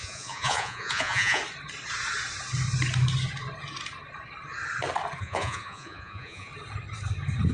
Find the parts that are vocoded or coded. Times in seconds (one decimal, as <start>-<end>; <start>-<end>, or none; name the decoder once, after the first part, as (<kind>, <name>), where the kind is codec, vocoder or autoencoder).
0.0-1.4 (vocoder, Vocos); 5.2-6.5